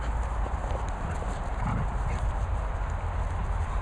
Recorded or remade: recorded